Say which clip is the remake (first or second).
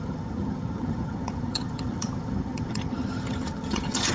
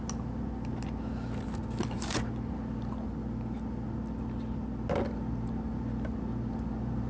first